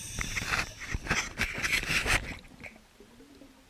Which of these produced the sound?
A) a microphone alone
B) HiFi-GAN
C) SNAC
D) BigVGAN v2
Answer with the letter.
A